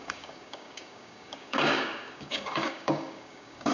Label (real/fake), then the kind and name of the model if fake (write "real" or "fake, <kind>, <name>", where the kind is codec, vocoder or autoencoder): fake, codec, DAC